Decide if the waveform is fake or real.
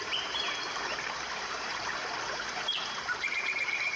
fake